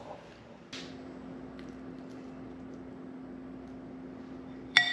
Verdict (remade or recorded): recorded